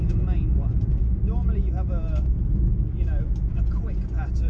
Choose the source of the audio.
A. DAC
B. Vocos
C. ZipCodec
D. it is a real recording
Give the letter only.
D